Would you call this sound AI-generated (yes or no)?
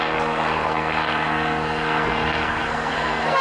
yes